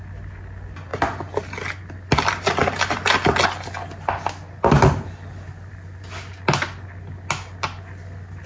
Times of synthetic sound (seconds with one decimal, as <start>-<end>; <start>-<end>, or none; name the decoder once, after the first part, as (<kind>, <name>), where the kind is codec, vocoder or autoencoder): none